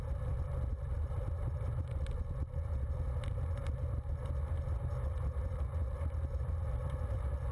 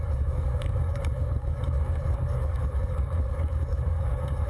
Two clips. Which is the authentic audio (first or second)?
first